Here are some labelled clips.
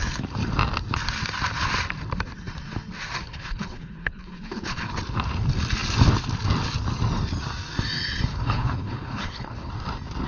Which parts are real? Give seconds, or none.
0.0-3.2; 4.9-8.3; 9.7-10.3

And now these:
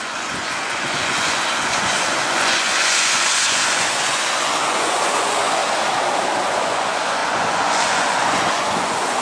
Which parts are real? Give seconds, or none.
5.6-6.5

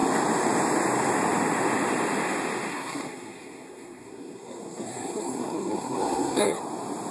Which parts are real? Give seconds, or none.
0.0-2.7; 6.6-7.1

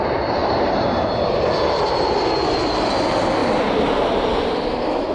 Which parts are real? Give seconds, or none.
0.0-5.1

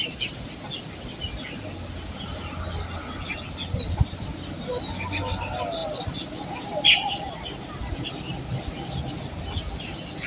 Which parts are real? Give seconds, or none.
0.0-10.3

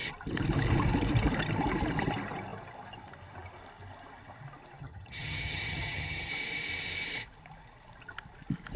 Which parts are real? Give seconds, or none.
0.0-4.8; 6.3-8.8